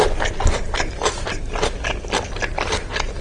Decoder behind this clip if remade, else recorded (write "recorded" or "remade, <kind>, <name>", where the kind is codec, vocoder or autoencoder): recorded